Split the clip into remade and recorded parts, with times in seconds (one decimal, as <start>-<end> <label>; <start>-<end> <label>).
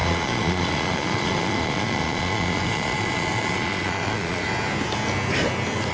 0.0-4.4 remade; 4.4-5.9 recorded